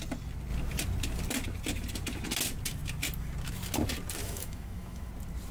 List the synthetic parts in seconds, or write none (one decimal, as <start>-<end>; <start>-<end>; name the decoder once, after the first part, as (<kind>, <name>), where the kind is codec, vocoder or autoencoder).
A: 4.2-5.1 (autoencoder, DAC-VAE)